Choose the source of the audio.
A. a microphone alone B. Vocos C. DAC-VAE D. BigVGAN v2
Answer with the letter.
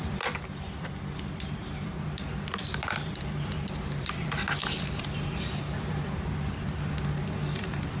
D